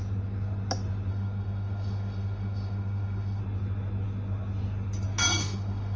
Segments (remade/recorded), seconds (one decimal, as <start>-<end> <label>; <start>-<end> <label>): 0.0-1.1 recorded; 1.1-3.4 remade; 3.4-5.4 recorded; 5.4-6.0 remade